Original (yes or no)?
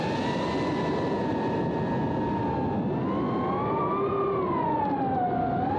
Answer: yes